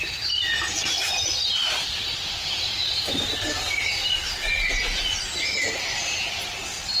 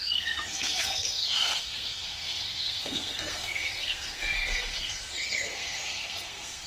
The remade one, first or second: second